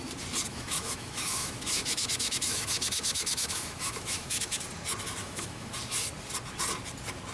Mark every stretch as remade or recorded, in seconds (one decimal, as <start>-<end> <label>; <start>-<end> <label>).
0.0-0.5 recorded; 0.5-4.6 remade; 4.6-5.2 recorded; 5.2-5.7 remade; 5.7-7.3 recorded